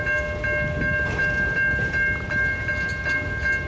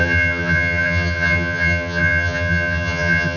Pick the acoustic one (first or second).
first